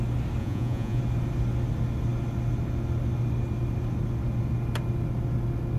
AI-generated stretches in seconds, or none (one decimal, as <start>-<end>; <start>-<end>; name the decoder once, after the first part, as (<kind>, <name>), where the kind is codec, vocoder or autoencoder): 0.4-1.0 (vocoder, Vocos)